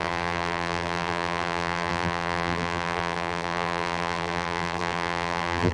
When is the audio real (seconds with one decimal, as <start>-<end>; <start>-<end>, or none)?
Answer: none